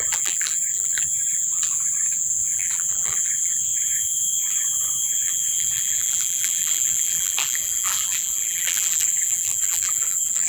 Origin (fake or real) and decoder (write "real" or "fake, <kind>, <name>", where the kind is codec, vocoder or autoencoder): fake, vocoder, BigVGAN v2